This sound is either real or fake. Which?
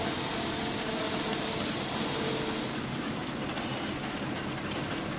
real